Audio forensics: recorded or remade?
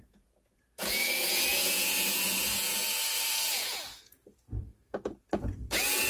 remade